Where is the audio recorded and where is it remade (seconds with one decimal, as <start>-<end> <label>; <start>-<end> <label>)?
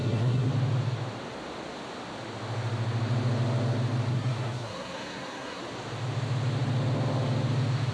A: 0.0-0.5 remade; 0.5-4.1 recorded; 4.1-5.6 remade; 5.6-7.9 recorded